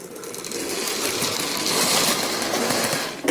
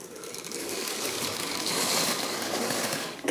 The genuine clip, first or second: first